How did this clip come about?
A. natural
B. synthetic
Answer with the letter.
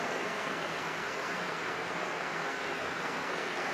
B